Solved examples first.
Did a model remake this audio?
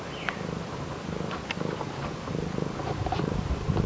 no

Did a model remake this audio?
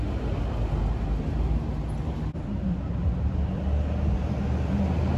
no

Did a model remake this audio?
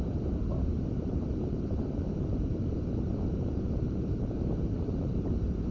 yes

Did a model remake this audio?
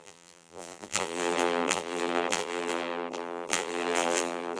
yes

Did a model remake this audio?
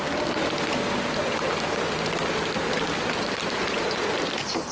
no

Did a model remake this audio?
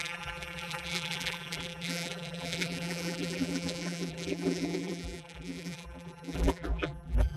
yes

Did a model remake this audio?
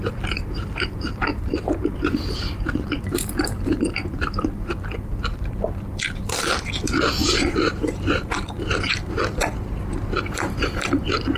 yes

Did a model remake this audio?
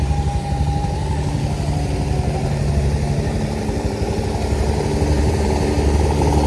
yes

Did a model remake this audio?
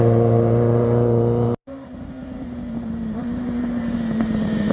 yes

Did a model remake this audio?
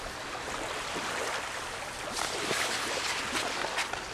no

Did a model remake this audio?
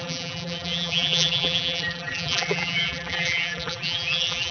yes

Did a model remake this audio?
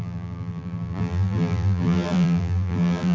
yes